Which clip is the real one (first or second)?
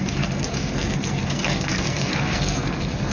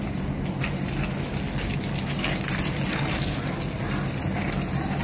second